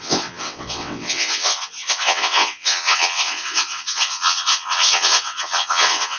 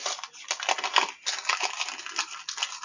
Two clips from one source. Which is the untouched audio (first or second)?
second